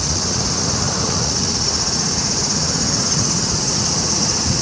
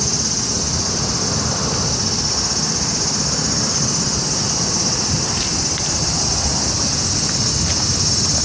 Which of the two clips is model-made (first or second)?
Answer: first